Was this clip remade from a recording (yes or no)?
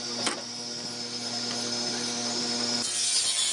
no